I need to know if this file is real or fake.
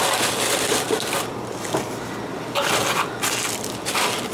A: real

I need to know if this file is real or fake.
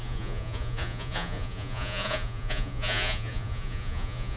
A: fake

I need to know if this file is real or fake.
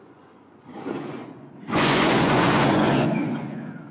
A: fake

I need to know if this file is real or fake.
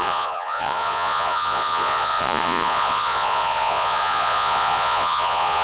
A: fake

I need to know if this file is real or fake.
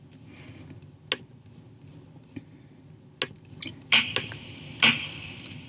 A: real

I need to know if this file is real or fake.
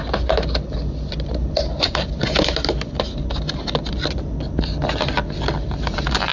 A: real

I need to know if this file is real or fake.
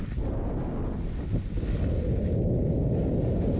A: real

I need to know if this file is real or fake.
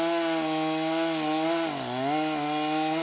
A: real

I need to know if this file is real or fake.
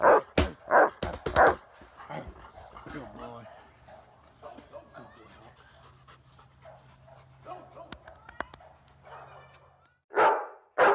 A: real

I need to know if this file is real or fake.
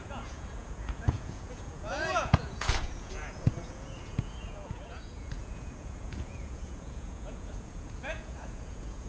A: fake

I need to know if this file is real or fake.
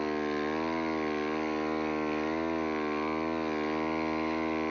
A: real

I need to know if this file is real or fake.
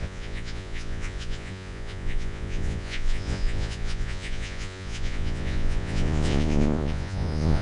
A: fake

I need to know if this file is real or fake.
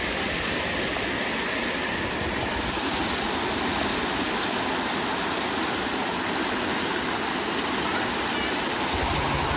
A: real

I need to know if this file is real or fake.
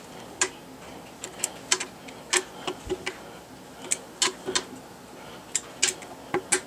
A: real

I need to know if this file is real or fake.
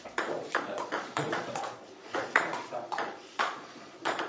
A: fake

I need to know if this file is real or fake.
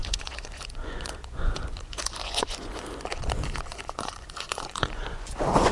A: fake